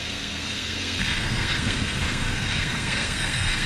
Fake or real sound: fake